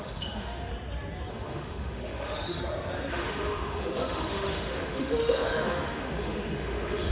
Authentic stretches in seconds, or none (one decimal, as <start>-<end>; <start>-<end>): 0.7-1.3; 2.6-3.1